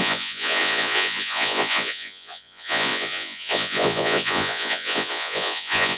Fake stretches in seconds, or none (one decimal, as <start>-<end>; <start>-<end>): 0.0-6.0